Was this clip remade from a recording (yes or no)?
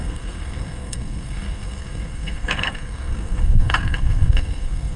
yes